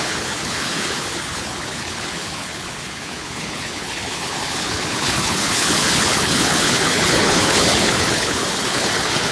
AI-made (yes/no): yes